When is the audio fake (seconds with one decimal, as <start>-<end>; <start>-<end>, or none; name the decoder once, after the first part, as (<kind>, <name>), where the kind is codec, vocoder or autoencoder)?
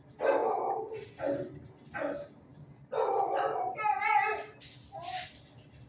none